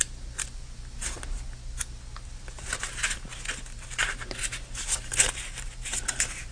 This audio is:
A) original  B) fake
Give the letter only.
A